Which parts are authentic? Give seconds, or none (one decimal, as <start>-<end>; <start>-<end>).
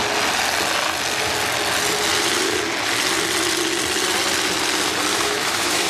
0.0-5.1